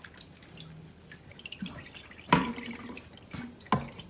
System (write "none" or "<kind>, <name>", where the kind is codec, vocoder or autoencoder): none